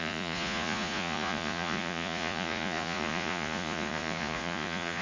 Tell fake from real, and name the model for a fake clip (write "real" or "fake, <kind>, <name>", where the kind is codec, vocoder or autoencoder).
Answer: fake, vocoder, Vocos